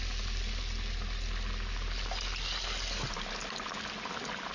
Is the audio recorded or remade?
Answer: recorded